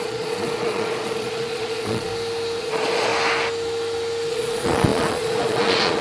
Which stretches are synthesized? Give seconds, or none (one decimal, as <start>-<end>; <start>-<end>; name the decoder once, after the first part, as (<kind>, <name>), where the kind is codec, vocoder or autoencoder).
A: 0.0-2.1 (vocoder, Vocos); 2.6-3.1; 4.3-6.0